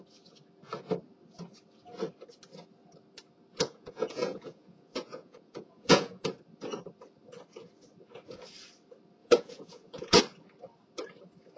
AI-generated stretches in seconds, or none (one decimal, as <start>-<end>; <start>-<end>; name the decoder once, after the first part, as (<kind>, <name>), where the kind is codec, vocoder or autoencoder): 3.5-6.3 (vocoder, Vocos); 9.2-10.2